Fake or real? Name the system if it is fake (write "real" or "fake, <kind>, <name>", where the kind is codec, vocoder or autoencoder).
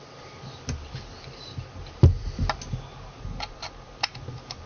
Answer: real